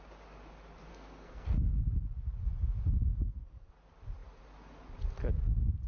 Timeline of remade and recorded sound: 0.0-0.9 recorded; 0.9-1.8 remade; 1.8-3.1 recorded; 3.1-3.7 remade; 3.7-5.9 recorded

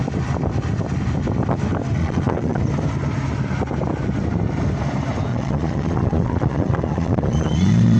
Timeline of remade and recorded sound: 0.0-2.0 recorded; 2.0-2.6 remade; 2.6-5.3 recorded; 5.3-8.0 remade